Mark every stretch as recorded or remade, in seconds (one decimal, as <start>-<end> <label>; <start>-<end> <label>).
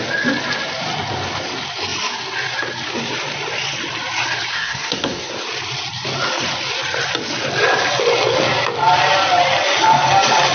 0.0-4.5 recorded; 4.5-5.3 remade; 5.3-10.5 recorded